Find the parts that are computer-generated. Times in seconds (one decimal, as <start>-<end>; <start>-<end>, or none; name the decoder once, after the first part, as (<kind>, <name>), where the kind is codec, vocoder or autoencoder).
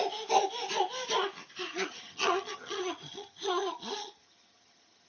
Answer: 1.7-5.1 (vocoder, HiFi-GAN)